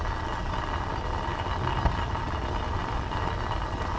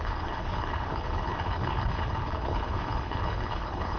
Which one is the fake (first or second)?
second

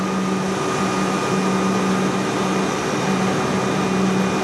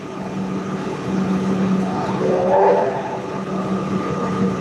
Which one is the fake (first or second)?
second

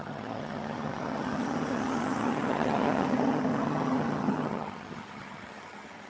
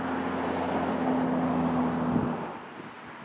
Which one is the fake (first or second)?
first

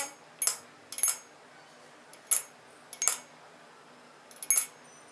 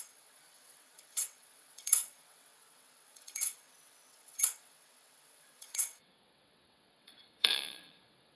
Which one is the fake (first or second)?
second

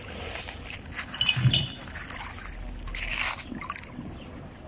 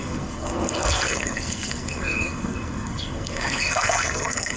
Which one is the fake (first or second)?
second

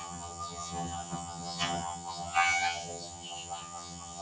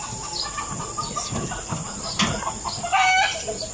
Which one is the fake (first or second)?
first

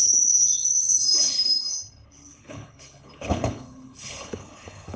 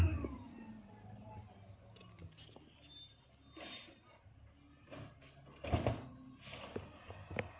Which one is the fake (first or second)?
first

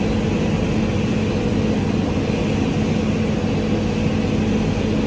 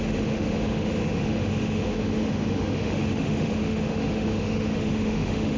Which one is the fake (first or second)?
second